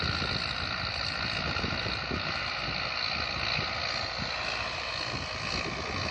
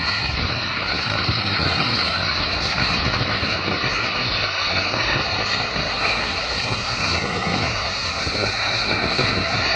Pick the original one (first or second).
first